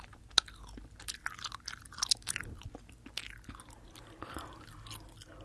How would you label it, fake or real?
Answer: real